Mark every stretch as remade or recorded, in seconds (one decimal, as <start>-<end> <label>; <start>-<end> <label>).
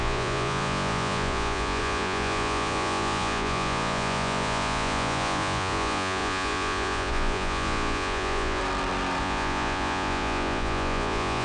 0.0-8.6 remade; 8.6-9.2 recorded; 9.2-11.4 remade